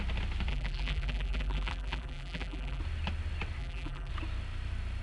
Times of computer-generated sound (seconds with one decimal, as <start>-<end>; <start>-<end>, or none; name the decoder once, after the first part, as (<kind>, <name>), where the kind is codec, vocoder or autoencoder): 0.5-2.8 (vocoder, BigVGAN v2); 3.6-4.1